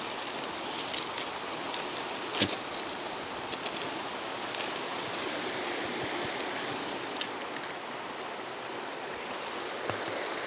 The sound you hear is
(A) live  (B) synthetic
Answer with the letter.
A